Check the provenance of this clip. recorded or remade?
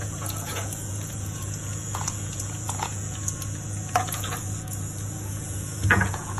remade